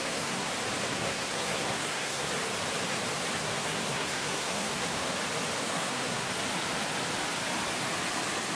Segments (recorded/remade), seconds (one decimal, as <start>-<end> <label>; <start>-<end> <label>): 0.0-0.5 remade; 0.5-0.9 recorded; 0.9-2.3 remade; 2.3-3.4 recorded; 3.4-5.1 remade; 5.1-5.6 recorded; 5.6-6.3 remade; 6.3-8.5 recorded